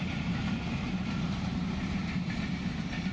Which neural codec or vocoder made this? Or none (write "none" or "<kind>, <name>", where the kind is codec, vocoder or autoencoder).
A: vocoder, BigVGAN v2